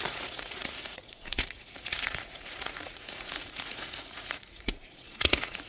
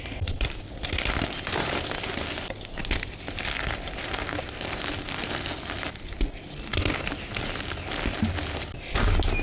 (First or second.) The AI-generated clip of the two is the first